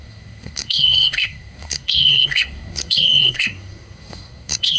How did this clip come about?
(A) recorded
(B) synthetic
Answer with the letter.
B